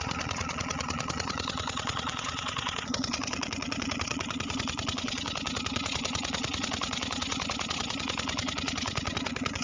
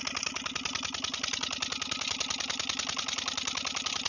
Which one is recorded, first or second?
second